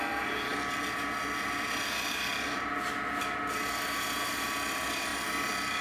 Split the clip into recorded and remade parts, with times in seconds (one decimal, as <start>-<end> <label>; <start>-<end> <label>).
0.0-5.8 recorded